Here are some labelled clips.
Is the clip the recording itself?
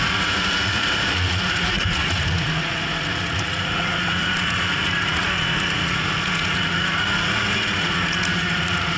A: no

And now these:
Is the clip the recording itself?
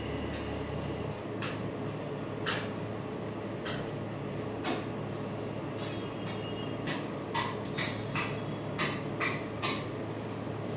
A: no